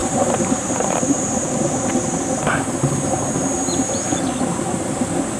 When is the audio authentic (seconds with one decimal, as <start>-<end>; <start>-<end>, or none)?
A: 4.1-4.9